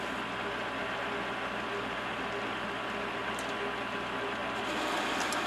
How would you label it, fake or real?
real